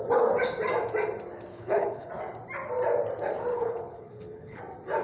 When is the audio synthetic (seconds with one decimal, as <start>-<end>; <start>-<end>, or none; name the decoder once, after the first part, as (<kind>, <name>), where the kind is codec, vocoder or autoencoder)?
1.5-2.1 (codec, HILCodec); 3.5-4.6